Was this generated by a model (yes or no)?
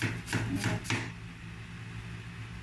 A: no